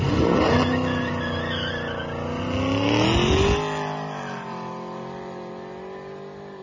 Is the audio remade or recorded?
recorded